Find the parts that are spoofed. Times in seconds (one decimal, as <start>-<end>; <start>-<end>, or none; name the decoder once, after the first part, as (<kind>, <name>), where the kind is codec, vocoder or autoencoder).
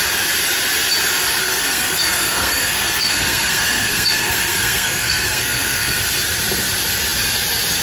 1.4-6.0 (codec, SNAC)